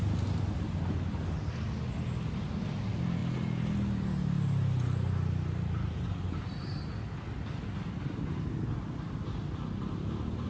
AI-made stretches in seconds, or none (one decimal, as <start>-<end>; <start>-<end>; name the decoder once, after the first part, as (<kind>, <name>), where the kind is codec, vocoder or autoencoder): none